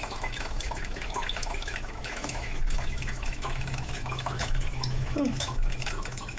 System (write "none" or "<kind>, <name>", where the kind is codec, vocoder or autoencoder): autoencoder, DAC-VAE